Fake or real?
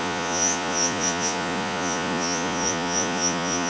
fake